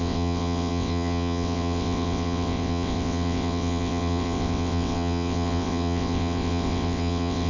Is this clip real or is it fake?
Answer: fake